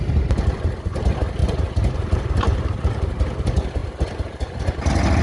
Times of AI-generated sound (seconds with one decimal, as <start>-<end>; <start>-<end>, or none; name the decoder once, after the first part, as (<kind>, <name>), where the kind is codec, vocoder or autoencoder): 1.4-3.2 (vocoder, BigVGAN v2)